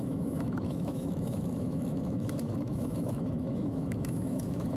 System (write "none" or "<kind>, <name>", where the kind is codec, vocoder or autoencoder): autoencoder, DAC-VAE